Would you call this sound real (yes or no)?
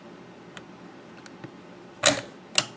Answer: yes